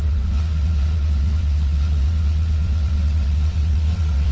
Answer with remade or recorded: remade